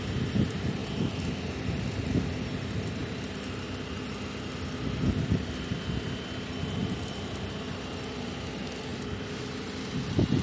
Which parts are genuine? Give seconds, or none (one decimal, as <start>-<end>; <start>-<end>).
0.0-10.4